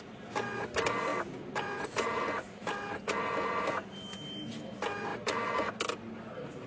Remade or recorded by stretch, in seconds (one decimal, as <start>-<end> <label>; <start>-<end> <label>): 0.0-6.7 recorded